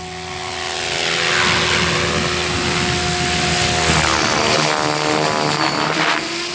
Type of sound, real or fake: real